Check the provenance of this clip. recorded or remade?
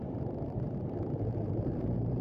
remade